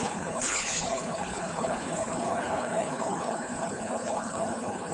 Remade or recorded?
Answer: remade